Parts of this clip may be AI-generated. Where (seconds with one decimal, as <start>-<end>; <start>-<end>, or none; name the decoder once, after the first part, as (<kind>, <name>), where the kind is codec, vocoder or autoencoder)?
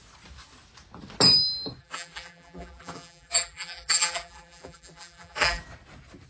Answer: 1.8-5.6 (vocoder, BigVGAN v2)